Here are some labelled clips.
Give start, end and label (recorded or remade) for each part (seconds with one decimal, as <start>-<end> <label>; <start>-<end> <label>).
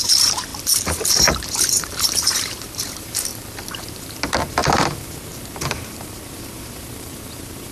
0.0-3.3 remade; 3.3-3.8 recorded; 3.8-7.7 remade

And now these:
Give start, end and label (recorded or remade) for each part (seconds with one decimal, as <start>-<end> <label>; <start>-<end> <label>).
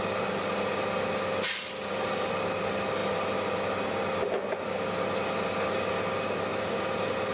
0.0-7.3 recorded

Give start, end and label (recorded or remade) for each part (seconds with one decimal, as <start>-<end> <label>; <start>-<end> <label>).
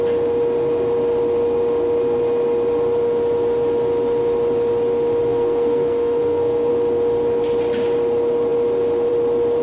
0.0-5.3 recorded; 5.3-6.7 remade; 6.7-9.6 recorded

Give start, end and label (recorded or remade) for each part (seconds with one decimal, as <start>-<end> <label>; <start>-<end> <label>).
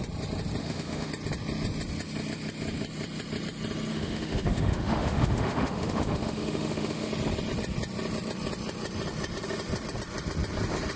0.0-0.6 recorded; 0.6-1.1 remade; 1.1-3.9 recorded; 3.9-7.1 remade; 7.1-11.0 recorded